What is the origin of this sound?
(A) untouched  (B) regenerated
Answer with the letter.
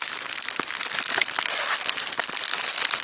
A